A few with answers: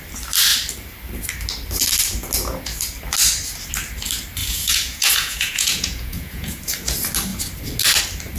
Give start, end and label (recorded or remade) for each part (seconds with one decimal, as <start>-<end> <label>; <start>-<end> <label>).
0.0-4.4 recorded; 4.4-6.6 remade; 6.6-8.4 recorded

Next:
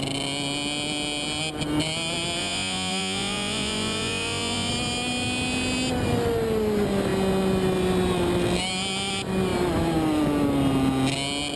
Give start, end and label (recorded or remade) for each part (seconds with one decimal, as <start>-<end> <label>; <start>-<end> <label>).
0.0-2.4 recorded; 2.4-4.7 remade; 4.7-11.6 recorded

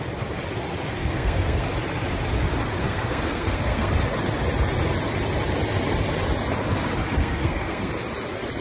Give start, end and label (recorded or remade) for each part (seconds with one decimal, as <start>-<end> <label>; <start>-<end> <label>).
0.0-1.0 recorded; 1.0-1.6 remade; 1.6-2.8 recorded; 2.8-3.9 remade; 3.9-7.2 recorded; 7.2-7.9 remade; 7.9-8.6 recorded